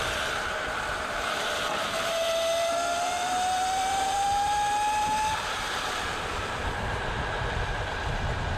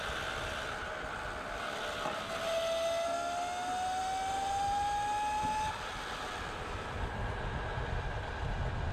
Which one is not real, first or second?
first